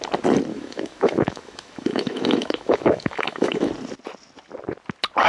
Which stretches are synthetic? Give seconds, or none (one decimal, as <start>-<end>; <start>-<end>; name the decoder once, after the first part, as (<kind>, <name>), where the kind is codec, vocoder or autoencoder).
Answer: 0.5-3.7 (autoencoder, DAC-VAE)